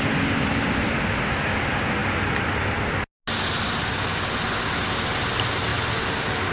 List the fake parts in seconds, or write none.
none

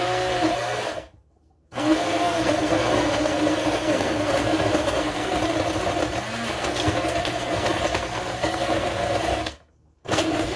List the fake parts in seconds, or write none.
0.0-5.4 (codec, SNAC); 6.5-10.6